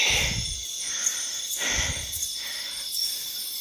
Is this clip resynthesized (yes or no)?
no